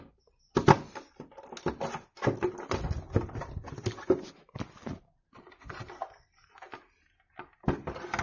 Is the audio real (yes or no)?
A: yes